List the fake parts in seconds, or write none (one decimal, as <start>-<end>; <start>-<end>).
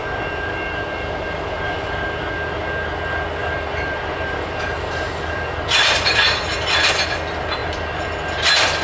0.0-2.2; 3.4-6.9; 7.6-8.8